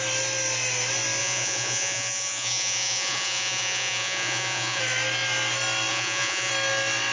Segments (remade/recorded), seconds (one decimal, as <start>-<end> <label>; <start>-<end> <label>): 0.0-1.2 recorded; 1.2-4.8 remade; 4.8-5.9 recorded; 5.9-6.5 remade; 6.5-7.1 recorded